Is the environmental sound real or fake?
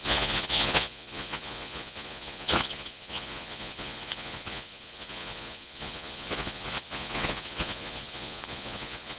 fake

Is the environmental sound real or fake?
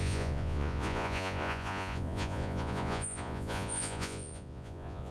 fake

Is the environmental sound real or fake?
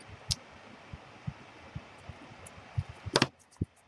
real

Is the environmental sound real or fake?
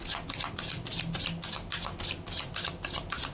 real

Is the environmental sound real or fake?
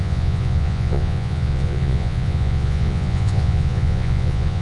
fake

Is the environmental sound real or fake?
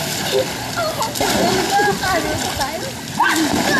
real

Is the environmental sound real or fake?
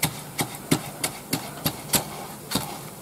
real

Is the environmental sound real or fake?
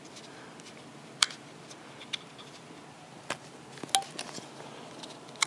real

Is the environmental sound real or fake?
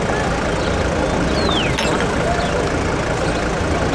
real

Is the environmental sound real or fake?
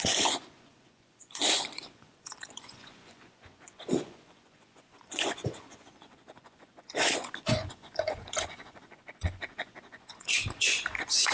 fake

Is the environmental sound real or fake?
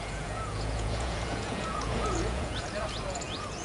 fake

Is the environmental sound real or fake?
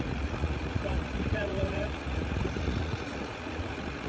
fake